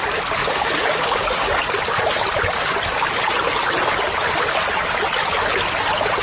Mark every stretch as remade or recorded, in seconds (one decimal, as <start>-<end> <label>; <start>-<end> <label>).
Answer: 0.0-0.4 recorded; 0.4-1.6 remade; 1.6-6.2 recorded